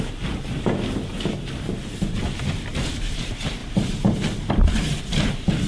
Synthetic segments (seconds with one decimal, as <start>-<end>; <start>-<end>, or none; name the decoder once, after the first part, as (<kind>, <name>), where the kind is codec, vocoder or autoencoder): 0.0-3.6 (vocoder, BigVGAN v2); 4.5-5.7

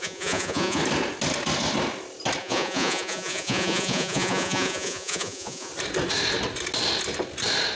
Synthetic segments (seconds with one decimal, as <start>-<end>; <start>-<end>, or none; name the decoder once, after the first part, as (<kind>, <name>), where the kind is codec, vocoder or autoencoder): 0.0-0.8 (vocoder, Vocos); 2.4-5.7

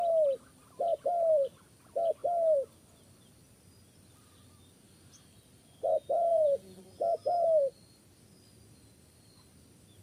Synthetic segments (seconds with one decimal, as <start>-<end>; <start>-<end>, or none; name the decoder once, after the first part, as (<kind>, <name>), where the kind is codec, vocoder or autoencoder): 6.3-6.8 (vocoder, Vocos)